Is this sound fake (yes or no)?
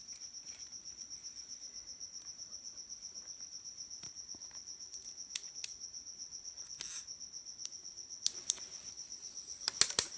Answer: no